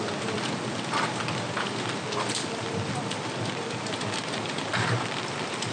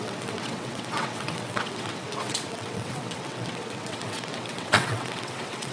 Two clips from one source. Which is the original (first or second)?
first